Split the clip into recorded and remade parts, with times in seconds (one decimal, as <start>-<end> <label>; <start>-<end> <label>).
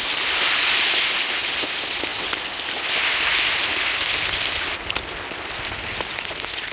0.0-6.7 recorded